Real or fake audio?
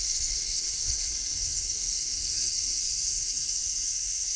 fake